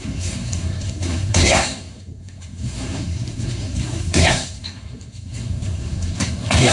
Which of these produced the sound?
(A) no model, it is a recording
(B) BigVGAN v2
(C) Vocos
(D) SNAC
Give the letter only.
D